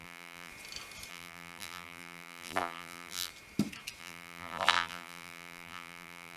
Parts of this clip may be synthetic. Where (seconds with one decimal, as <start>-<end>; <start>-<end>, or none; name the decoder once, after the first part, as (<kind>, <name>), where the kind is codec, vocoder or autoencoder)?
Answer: 0.0-0.5 (vocoder, BigVGAN v2); 1.1-3.3; 4.0-6.4